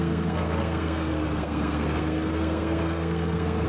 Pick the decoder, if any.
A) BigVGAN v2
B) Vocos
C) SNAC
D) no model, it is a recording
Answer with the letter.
C